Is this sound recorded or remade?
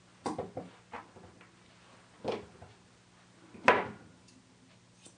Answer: recorded